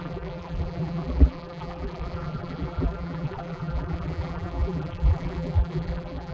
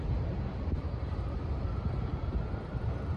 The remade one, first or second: first